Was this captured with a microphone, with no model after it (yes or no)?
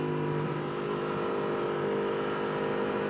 yes